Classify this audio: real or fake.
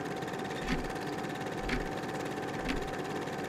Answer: real